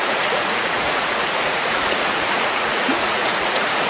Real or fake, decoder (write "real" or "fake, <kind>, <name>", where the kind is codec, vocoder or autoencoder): fake, vocoder, Vocos